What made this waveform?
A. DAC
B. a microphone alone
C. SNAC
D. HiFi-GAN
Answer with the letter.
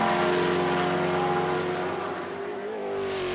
B